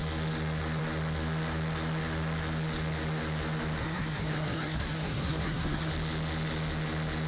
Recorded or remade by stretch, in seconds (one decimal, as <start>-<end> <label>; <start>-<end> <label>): 0.0-3.8 recorded; 3.8-5.9 remade; 5.9-7.3 recorded